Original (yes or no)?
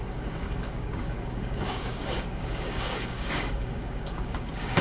no